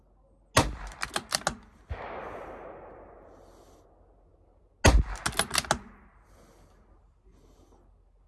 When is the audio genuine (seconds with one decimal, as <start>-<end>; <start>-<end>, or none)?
0.0-8.3